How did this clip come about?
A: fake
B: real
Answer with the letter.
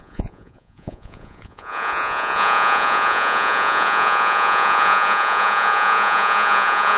A